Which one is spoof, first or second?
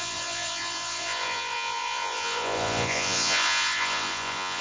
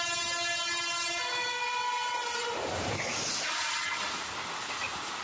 first